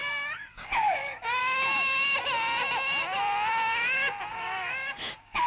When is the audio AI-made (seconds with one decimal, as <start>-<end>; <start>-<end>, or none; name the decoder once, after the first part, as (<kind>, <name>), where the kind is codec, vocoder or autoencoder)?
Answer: 0.0-1.4 (codec, DAC); 4.3-5.5